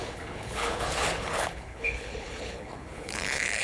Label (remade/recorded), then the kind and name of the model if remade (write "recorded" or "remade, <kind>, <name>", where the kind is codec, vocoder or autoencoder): remade, codec, HILCodec